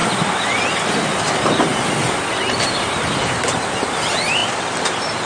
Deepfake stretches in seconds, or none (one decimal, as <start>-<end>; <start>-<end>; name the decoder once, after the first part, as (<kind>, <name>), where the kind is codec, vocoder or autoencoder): none